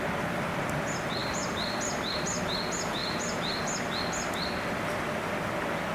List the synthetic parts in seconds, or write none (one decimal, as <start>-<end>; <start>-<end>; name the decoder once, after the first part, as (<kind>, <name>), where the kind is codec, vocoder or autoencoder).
1.2-2.4 (vocoder, BigVGAN v2); 3.0-4.0